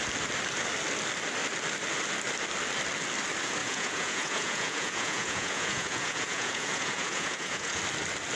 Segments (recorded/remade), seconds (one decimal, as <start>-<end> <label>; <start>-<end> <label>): 0.0-3.6 recorded; 3.6-7.8 remade; 7.8-8.4 recorded